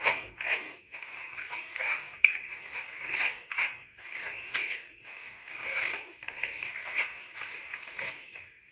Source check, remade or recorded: remade